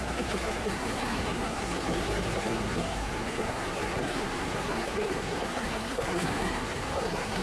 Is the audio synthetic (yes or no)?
yes